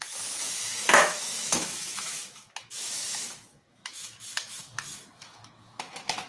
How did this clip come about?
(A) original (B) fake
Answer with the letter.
B